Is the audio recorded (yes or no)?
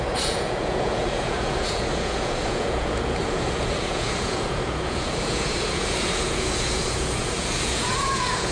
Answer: no